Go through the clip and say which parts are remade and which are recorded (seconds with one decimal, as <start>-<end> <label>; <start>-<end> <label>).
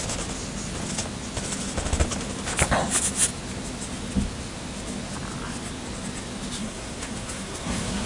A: 0.0-6.6 recorded; 6.6-8.1 remade